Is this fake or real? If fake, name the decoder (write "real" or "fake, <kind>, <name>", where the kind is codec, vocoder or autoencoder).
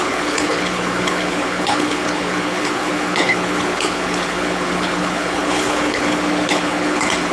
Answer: fake, codec, HILCodec